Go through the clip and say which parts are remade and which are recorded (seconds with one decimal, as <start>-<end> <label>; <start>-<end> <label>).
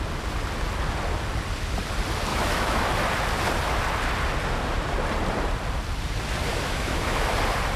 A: 0.0-2.3 recorded; 2.3-2.8 remade; 2.8-6.5 recorded; 6.5-7.3 remade; 7.3-7.8 recorded